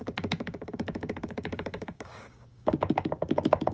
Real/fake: fake